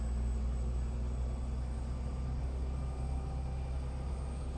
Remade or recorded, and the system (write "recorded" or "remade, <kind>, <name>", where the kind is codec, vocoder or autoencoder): recorded